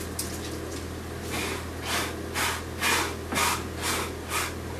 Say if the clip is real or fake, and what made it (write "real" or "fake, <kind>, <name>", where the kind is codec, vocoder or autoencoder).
real